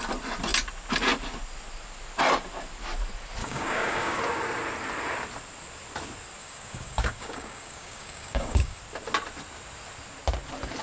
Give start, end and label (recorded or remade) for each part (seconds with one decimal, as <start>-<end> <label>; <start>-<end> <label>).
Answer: 0.0-3.4 recorded; 3.4-4.2 remade; 4.2-6.4 recorded; 6.4-8.8 remade; 8.8-10.8 recorded